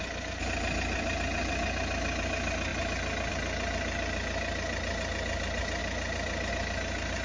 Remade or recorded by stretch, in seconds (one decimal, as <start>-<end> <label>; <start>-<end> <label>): 0.0-7.2 recorded